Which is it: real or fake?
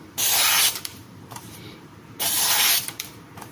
fake